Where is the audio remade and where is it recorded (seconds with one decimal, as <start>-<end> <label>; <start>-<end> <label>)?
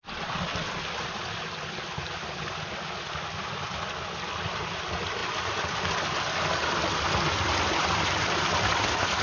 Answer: 0.0-9.2 recorded